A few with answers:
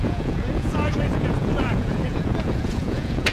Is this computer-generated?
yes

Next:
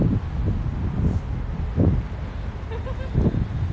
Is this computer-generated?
no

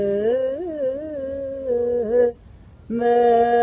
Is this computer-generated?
no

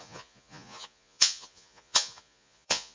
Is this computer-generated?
yes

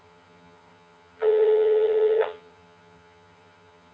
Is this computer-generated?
yes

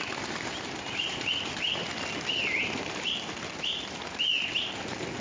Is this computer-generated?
no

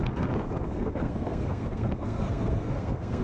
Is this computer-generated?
yes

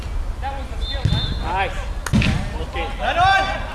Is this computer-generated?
no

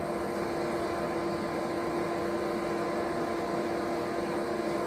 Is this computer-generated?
no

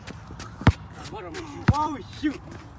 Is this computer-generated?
yes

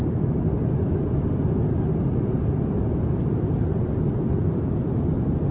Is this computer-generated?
no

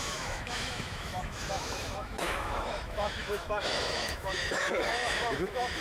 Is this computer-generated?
yes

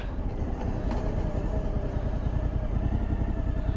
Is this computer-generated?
no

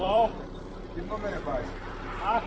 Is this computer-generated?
yes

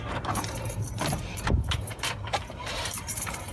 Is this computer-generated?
yes